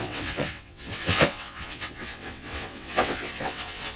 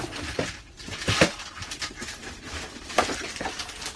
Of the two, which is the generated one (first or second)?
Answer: first